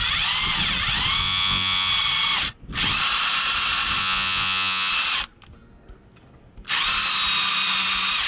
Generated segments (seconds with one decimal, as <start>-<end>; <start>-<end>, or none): 1.2-1.9; 4.0-4.9